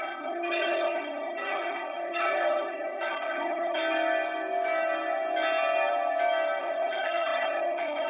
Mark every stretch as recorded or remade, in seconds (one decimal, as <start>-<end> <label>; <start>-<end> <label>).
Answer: 0.0-3.8 remade; 3.8-6.6 recorded; 6.6-8.1 remade